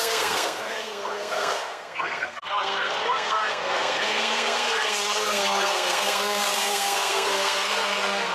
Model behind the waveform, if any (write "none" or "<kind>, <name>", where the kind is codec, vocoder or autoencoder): codec, SNAC